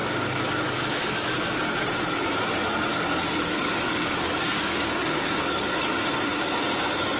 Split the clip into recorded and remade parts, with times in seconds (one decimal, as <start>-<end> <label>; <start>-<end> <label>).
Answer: 0.0-1.6 remade; 1.6-2.9 recorded; 2.9-5.6 remade; 5.6-7.2 recorded